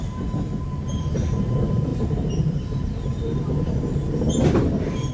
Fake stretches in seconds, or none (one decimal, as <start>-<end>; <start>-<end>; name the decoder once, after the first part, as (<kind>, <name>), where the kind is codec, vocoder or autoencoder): 0.0-5.1 (vocoder, BigVGAN v2)